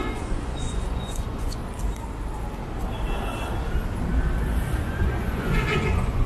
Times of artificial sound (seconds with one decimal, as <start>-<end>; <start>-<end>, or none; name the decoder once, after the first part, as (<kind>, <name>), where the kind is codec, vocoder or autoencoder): 0.0-1.6 (vocoder, Vocos); 4.8-6.3